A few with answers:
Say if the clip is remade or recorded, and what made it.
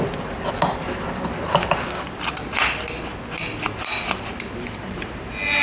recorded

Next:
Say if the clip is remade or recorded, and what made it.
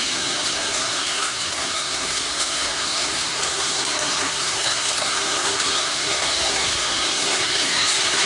remade, codec, SNAC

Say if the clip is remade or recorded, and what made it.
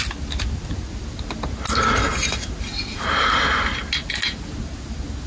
recorded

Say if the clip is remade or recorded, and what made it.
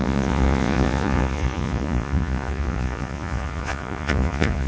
remade, vocoder, Vocos